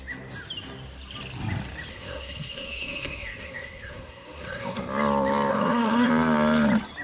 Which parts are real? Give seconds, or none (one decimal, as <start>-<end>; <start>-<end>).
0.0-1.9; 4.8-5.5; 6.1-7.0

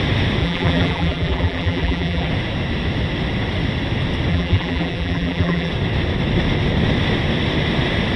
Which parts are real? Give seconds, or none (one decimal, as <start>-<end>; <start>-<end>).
0.0-0.4; 2.3-4.3; 5.7-8.2

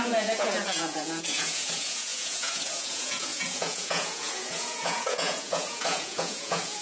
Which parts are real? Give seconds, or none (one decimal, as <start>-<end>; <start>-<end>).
none

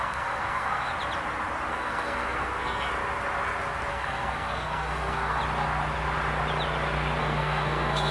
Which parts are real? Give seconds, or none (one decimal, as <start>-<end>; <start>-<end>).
0.9-1.7; 2.9-3.9; 5.4-7.2